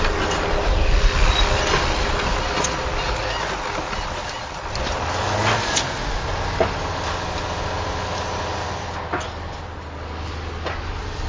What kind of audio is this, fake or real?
real